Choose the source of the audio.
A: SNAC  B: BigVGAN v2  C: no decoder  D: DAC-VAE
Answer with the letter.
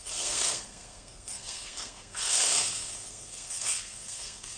A